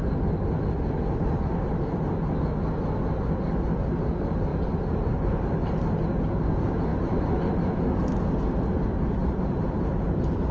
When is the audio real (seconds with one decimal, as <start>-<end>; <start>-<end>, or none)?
0.0-1.5; 2.0-4.5; 6.0-6.9; 7.5-9.2